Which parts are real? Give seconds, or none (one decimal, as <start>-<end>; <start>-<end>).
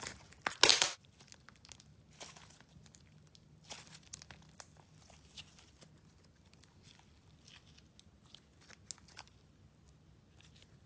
0.0-10.9